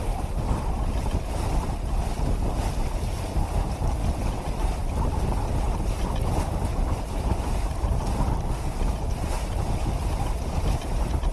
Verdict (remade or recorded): remade